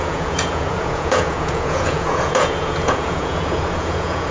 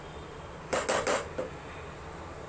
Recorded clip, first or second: second